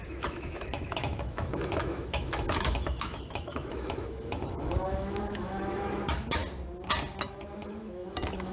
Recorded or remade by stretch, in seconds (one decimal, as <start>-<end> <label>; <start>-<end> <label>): 0.0-6.4 remade; 6.4-7.2 recorded; 7.2-8.5 remade